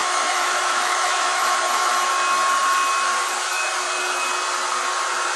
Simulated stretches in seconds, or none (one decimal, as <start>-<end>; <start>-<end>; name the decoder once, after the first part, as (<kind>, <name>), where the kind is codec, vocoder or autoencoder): 0.0-1.9 (autoencoder, DAC-VAE)

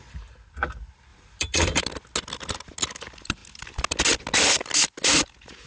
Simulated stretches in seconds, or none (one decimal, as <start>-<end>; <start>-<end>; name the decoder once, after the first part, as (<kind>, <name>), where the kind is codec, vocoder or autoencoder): none

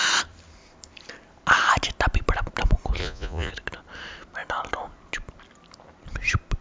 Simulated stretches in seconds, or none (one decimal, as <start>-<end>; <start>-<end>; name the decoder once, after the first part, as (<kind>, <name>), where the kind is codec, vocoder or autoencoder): 3.0-3.5 (vocoder, Vocos)

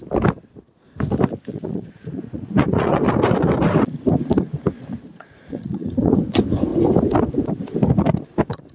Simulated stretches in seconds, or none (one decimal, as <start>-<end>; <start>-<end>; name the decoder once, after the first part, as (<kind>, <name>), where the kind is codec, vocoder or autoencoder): 1.5-3.0 (vocoder, Vocos); 5.1-6.2

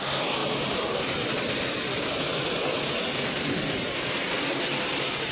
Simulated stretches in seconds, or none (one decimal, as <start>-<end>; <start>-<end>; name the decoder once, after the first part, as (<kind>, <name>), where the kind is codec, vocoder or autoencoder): none

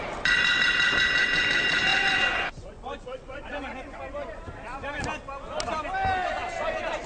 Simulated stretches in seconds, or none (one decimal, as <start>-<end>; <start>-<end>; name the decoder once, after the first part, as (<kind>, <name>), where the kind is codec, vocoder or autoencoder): 1.9-4.0 (vocoder, Vocos)

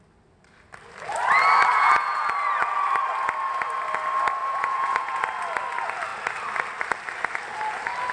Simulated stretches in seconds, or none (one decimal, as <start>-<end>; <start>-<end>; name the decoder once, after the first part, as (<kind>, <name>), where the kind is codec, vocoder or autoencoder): 1.7-2.3 (vocoder, Vocos); 4.4-5.2